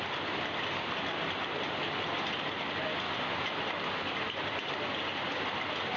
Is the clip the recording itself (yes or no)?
yes